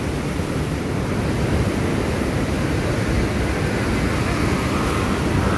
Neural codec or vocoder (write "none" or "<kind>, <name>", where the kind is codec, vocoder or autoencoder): none